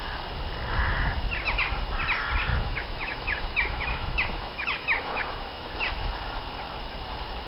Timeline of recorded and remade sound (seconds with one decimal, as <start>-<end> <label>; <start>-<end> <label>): 0.0-2.5 recorded; 2.5-5.7 remade; 5.7-7.5 recorded